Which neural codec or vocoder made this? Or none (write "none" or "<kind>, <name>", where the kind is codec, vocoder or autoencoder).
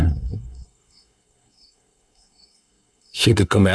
codec, SNAC